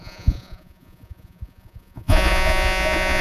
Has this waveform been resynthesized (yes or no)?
yes